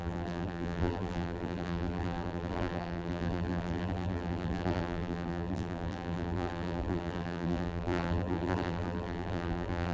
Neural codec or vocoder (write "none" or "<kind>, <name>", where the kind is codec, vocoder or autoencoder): vocoder, BigVGAN v2